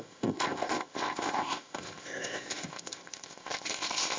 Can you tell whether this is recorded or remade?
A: remade